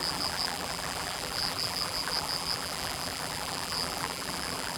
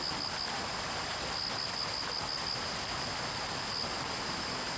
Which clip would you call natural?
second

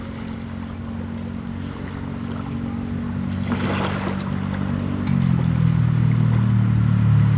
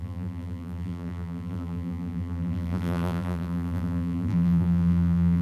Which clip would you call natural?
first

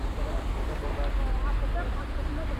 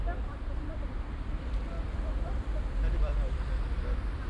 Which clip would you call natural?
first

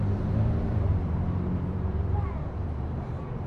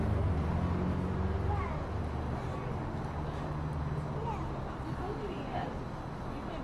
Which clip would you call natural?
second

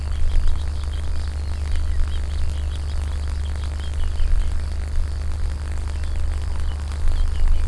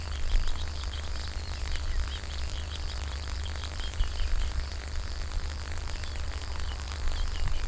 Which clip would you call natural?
first